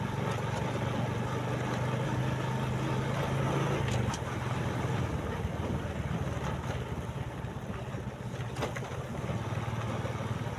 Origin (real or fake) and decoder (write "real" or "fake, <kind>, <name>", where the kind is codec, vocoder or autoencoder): real